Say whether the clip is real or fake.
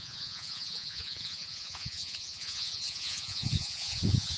fake